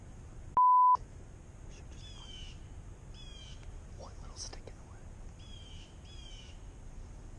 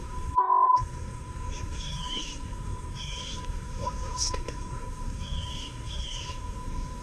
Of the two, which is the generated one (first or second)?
second